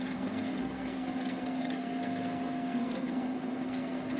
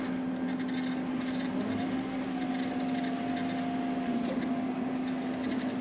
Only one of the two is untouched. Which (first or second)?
second